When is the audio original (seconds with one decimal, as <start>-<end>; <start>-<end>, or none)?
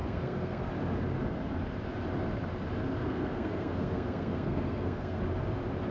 0.7-3.0; 5.2-5.9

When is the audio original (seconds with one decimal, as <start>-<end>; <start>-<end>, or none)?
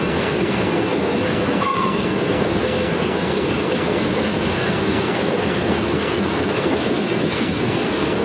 none